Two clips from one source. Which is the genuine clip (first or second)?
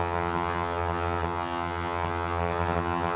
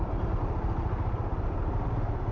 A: second